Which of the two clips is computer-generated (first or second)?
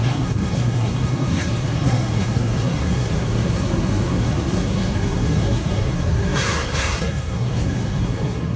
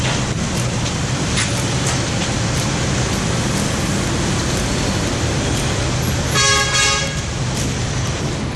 first